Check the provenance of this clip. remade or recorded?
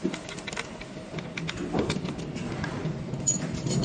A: recorded